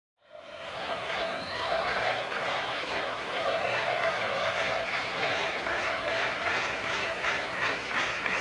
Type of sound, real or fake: fake